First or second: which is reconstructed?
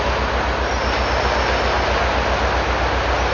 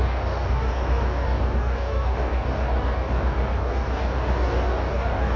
second